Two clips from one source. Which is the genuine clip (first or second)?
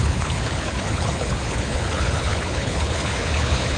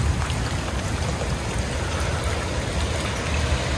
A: second